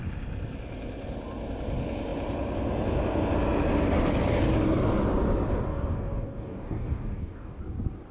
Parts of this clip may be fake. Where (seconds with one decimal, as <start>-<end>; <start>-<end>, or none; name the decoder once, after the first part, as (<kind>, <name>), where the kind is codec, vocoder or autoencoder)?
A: 5.5-7.6 (codec, DAC)